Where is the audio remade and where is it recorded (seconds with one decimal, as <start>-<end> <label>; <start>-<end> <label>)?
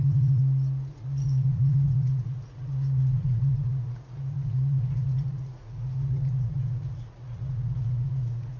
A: 0.0-0.4 remade; 0.4-0.9 recorded; 0.9-8.6 remade